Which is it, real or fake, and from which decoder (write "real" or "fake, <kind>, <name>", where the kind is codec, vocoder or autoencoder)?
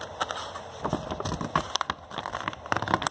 real